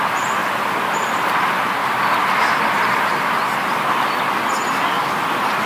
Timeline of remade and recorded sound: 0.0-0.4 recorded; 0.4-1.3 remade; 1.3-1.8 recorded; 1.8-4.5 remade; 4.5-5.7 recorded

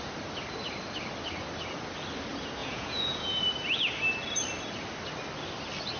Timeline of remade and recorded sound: 0.0-2.6 recorded; 2.6-3.3 remade; 3.3-6.0 recorded

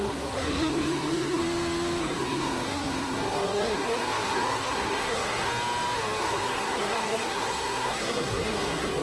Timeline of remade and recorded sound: 0.0-1.4 remade; 1.4-2.0 recorded; 2.0-5.5 remade; 5.5-6.2 recorded; 6.2-9.0 remade